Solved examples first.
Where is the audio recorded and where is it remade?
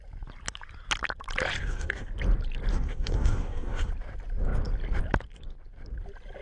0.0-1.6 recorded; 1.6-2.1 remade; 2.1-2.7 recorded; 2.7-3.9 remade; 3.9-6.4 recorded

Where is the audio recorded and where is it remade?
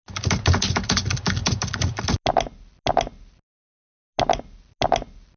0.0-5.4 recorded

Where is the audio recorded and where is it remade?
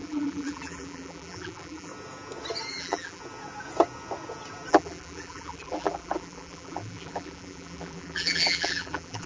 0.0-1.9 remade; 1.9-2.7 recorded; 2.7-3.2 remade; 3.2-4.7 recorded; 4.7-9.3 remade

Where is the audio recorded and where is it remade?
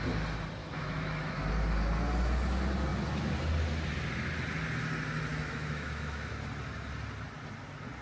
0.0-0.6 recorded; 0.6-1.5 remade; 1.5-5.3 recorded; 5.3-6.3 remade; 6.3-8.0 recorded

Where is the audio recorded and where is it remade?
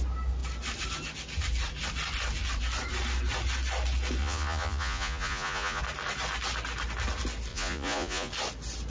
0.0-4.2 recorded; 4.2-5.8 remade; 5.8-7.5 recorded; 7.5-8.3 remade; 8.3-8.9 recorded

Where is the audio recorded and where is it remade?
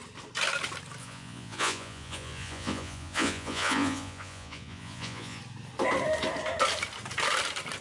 0.0-1.0 recorded; 1.0-5.4 remade; 5.4-7.8 recorded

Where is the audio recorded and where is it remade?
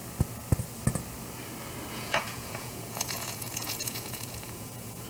0.0-1.9 recorded; 1.9-5.1 remade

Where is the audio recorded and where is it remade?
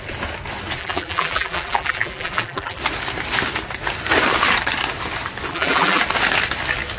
0.0-0.8 recorded; 0.8-2.8 remade; 2.8-5.5 recorded; 5.5-6.0 remade; 6.0-7.0 recorded